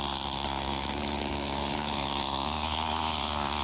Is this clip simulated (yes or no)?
yes